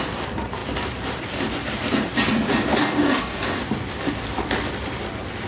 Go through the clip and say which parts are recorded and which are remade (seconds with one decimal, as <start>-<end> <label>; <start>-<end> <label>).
0.0-2.8 recorded; 2.8-3.6 remade; 3.6-5.5 recorded